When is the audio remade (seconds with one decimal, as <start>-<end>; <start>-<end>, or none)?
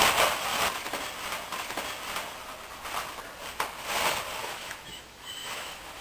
4.4-6.0